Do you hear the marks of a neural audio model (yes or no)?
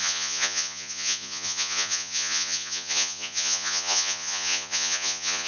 yes